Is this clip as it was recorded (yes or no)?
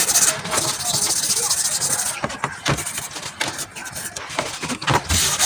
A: yes